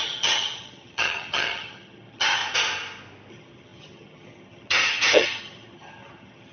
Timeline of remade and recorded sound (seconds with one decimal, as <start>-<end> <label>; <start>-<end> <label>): 0.0-2.4 remade; 2.4-3.3 recorded; 3.3-6.5 remade